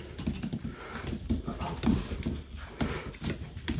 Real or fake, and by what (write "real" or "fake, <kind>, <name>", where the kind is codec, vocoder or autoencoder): real